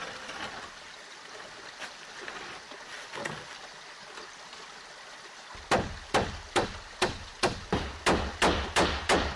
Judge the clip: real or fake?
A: real